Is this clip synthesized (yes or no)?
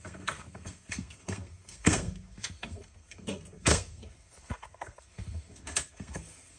yes